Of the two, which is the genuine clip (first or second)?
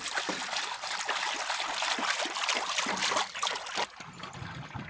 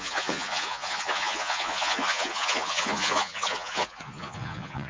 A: first